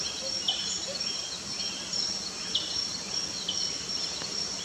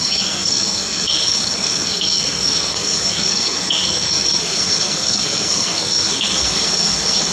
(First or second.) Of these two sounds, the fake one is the second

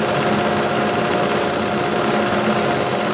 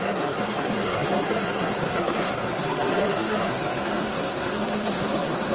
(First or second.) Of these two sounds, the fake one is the second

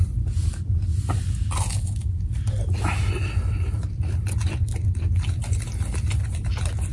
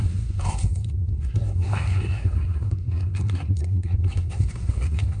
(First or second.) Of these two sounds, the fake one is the second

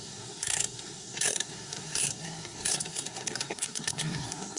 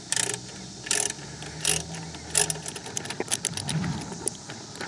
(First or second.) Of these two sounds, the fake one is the first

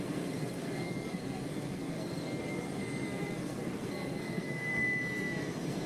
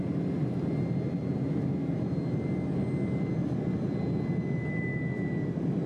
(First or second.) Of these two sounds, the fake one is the first